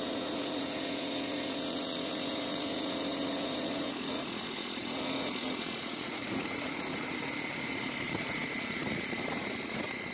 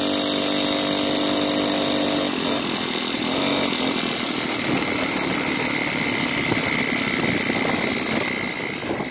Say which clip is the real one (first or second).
second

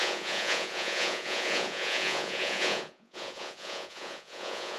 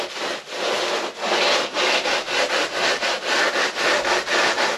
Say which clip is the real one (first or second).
second